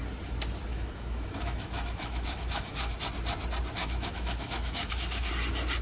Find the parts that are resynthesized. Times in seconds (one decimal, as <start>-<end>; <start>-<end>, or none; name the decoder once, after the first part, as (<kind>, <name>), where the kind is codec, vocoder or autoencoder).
0.7-2.9 (autoencoder, DAC-VAE); 3.8-5.3